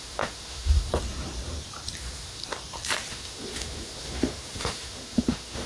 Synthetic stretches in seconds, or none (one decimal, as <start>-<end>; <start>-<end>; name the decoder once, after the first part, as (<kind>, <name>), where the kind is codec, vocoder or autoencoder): 0.0-0.9 (autoencoder, DAC-VAE); 2.0-2.4; 3.1-5.7